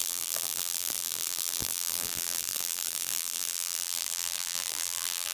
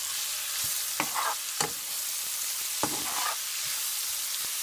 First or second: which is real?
second